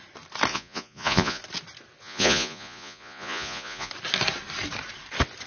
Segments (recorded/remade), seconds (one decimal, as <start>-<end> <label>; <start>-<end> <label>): 0.0-0.5 recorded; 0.5-1.4 remade; 1.4-2.0 recorded; 2.0-3.9 remade; 3.9-5.5 recorded